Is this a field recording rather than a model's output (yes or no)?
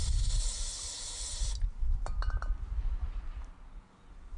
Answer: yes